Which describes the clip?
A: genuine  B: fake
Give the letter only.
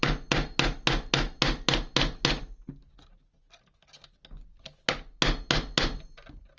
A